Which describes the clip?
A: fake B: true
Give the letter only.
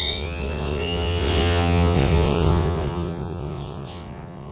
A